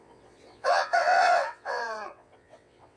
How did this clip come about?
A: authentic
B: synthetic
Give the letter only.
B